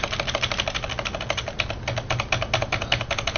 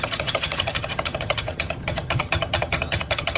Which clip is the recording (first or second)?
first